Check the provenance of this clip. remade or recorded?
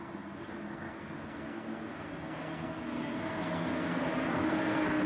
remade